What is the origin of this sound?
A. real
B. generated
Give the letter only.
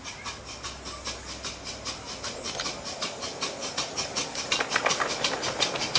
A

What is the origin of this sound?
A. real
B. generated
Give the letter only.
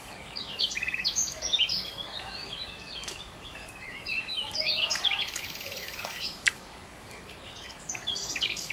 B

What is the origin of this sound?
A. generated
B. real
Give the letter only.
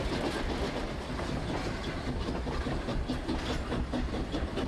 B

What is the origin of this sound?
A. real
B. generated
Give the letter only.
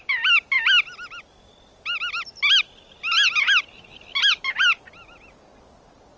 A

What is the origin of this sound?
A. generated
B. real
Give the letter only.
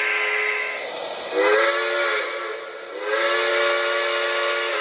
B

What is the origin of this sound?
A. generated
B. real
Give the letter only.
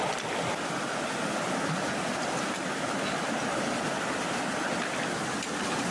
B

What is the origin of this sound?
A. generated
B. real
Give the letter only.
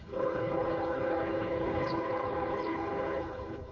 A